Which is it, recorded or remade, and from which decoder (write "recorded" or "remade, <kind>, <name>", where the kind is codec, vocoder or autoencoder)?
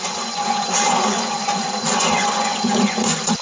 remade, vocoder, Vocos